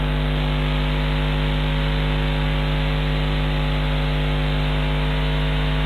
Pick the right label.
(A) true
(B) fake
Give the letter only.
A